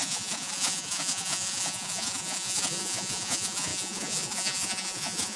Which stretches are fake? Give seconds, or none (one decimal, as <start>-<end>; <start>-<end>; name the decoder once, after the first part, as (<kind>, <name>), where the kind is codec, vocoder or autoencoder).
0.0-5.4 (vocoder, Vocos)